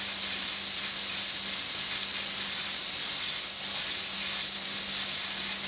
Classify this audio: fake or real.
real